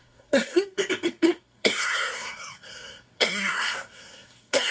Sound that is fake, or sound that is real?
fake